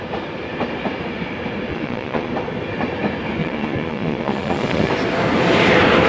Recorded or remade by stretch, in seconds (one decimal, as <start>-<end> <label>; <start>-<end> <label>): 0.0-1.7 recorded; 1.7-2.3 remade; 2.3-3.4 recorded; 3.4-4.9 remade; 4.9-6.1 recorded